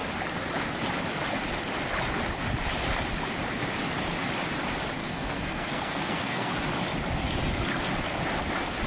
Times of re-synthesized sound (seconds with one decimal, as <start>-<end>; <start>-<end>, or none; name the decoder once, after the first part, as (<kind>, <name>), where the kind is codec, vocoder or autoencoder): 5.0-6.5 (codec, SNAC)